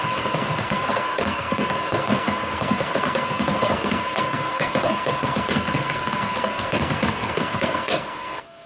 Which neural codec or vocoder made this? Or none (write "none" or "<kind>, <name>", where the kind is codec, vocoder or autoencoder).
codec, SNAC